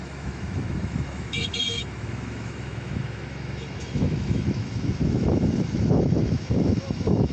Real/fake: fake